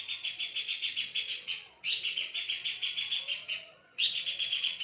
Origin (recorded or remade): remade